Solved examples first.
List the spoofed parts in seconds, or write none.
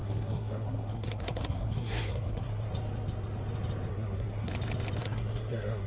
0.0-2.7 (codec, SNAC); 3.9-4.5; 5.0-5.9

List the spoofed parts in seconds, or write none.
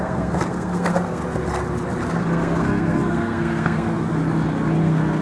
0.0-1.2 (codec, SNAC); 2.1-4.2; 4.8-5.2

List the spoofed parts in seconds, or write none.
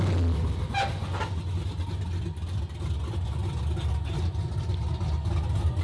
none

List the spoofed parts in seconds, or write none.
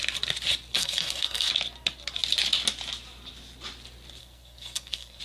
0.8-1.5 (codec, SNAC); 4.2-5.2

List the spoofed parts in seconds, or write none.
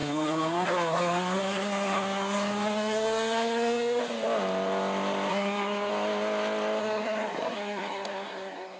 0.0-4.0 (codec, SNAC); 5.3-5.9; 6.8-8.8